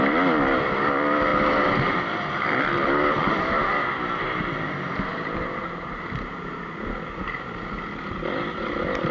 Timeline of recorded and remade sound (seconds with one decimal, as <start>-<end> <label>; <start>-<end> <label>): 0.0-5.1 recorded; 5.1-6.0 remade; 6.0-9.1 recorded